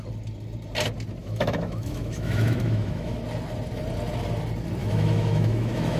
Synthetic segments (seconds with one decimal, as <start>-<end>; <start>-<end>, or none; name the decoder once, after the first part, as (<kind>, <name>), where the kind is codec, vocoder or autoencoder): 1.2-3.2 (autoencoder, DAC-VAE); 4.8-6.0